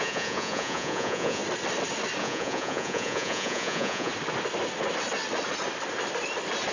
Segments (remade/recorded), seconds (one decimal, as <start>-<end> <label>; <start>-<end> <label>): 0.0-1.4 remade; 1.4-2.2 recorded; 2.2-4.1 remade; 4.1-6.7 recorded